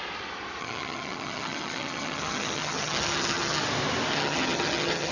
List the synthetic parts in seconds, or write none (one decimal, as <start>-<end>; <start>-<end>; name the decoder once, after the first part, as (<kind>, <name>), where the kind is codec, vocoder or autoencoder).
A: 0.6-3.6 (vocoder, HiFi-GAN); 4.1-5.1